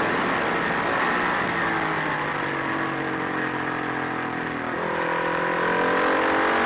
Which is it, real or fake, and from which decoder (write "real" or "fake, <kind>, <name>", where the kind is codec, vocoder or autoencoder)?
real